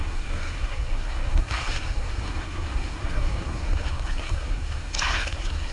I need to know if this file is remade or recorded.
remade